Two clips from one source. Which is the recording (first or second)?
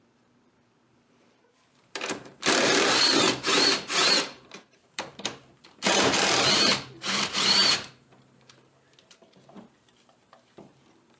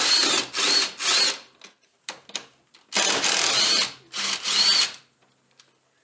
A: second